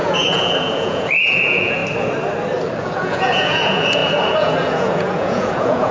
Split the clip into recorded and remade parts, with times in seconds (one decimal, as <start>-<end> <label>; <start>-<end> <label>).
0.0-1.8 remade; 1.8-2.8 recorded; 2.8-5.9 remade